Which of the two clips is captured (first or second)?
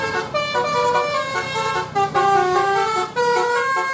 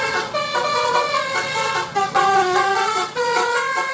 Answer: first